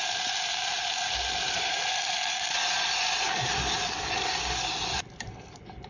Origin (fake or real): fake